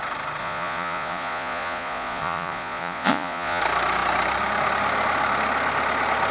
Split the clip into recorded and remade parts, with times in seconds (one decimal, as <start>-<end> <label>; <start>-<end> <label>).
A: 0.0-0.4 recorded; 0.4-3.6 remade; 3.6-6.3 recorded